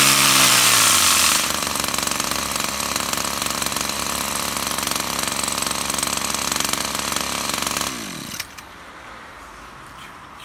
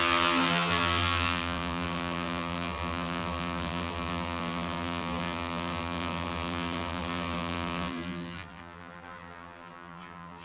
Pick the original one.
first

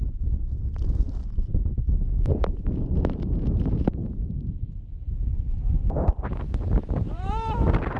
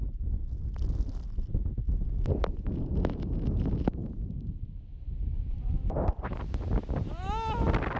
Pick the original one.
second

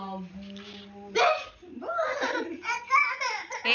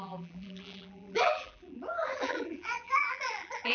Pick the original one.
first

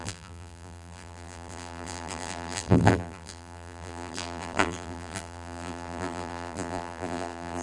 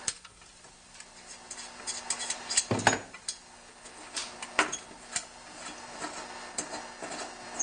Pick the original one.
second